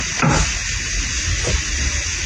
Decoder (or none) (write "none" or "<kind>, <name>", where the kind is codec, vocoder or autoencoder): none